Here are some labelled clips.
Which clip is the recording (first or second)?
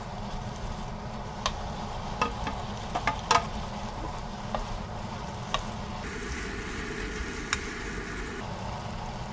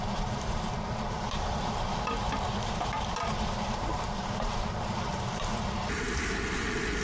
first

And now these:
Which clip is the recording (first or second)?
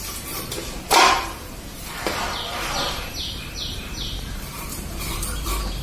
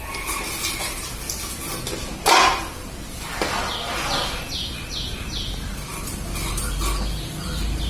second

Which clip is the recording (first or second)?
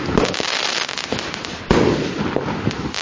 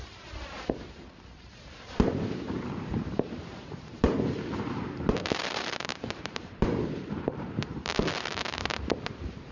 first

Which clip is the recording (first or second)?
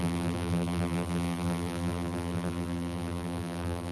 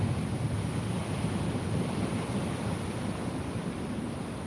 second